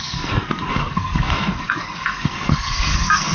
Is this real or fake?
fake